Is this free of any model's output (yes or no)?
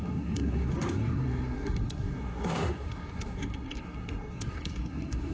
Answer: no